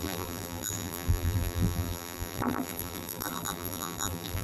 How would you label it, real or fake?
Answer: fake